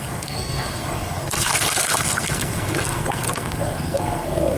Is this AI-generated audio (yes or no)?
yes